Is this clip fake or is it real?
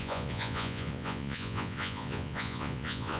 fake